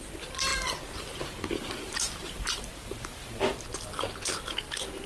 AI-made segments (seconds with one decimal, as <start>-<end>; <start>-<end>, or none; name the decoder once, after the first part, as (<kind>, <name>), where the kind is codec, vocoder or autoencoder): none